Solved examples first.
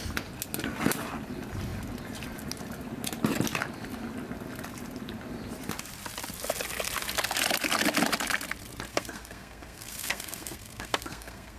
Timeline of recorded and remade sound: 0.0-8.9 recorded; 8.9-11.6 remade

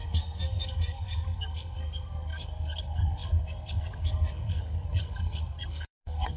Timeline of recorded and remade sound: 0.0-6.4 remade

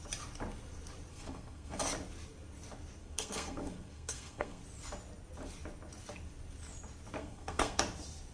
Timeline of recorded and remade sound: 0.0-1.1 recorded; 1.1-1.8 remade; 1.8-3.0 recorded; 3.0-4.6 remade; 4.6-7.2 recorded; 7.2-7.8 remade; 7.8-8.3 recorded

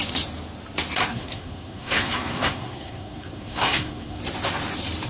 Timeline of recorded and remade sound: 0.0-1.1 recorded; 1.1-4.2 remade; 4.2-5.1 recorded

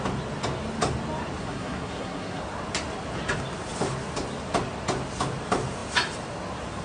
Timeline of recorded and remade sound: 0.0-1.4 recorded; 1.4-2.4 remade; 2.4-6.8 recorded

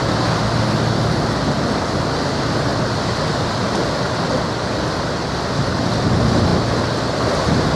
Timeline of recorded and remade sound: 0.0-7.8 recorded

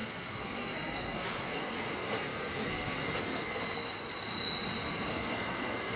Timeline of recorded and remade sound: 0.0-3.6 remade; 3.6-5.1 recorded; 5.1-6.0 remade

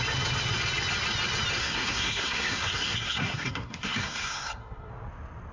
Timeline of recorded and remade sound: 0.0-1.6 recorded; 1.6-4.9 remade; 4.9-5.5 recorded